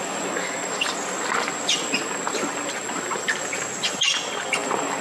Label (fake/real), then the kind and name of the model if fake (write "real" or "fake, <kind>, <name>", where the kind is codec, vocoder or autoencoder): real